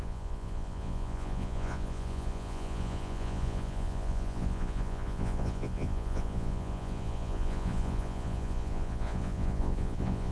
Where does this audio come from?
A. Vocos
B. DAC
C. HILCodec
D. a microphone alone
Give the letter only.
A